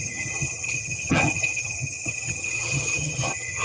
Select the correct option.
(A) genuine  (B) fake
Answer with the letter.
B